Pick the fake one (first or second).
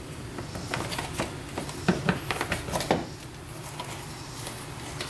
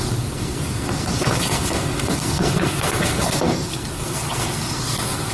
second